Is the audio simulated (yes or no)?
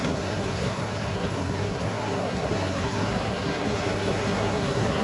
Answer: yes